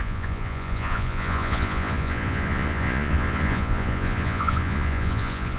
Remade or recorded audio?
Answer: remade